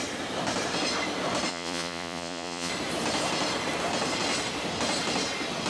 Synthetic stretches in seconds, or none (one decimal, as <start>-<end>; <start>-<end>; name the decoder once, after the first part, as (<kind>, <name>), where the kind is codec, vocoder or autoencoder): 1.5-2.7 (vocoder, Vocos)